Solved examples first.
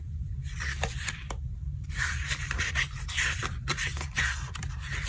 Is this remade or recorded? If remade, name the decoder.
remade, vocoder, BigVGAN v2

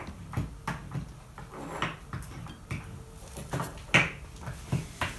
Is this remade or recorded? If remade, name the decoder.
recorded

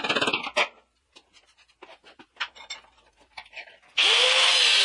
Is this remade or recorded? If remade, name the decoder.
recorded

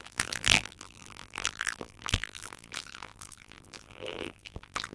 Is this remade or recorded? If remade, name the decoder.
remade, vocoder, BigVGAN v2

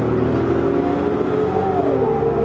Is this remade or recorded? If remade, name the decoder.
recorded